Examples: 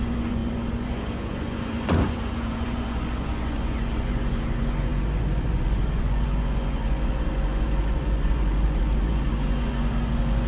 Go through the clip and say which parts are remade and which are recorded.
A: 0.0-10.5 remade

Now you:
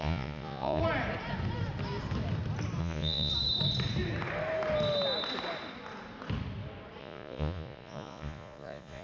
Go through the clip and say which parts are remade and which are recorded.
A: 0.0-0.8 remade; 0.8-2.8 recorded; 2.8-3.3 remade; 3.3-7.0 recorded; 7.0-9.0 remade

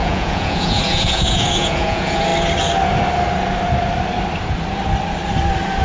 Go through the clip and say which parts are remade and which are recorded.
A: 0.0-2.3 remade; 2.3-5.8 recorded